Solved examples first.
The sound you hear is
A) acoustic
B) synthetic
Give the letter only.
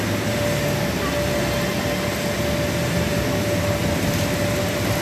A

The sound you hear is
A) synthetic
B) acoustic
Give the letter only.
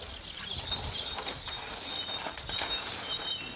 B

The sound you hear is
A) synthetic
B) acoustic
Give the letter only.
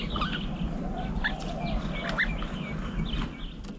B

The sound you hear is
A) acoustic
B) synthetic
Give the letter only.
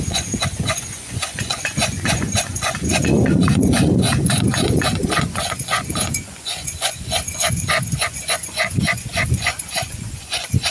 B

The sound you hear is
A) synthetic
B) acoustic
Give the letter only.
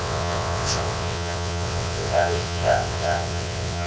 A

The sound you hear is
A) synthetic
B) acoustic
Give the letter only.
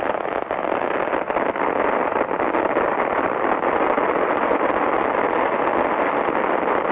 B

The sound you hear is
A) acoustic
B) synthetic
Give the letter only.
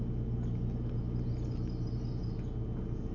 A